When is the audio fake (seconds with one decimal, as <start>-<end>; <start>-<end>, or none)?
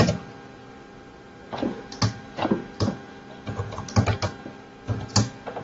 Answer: 0.6-2.2